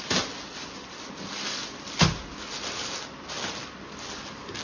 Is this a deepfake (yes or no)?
no